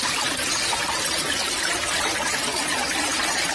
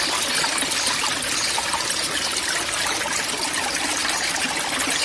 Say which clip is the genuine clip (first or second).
second